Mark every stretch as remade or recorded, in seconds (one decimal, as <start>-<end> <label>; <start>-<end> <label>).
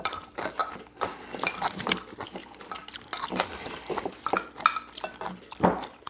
0.0-6.1 recorded